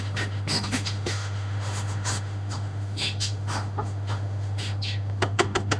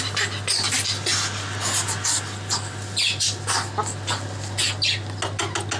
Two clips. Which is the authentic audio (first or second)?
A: second